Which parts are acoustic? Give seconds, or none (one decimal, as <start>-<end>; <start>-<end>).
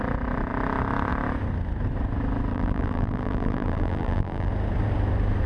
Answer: 0.0-2.5; 4.5-5.5